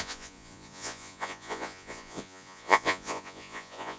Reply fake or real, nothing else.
fake